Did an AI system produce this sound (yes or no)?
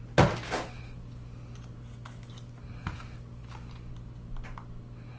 no